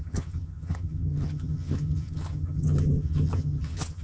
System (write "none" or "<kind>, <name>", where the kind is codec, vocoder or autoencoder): vocoder, HiFi-GAN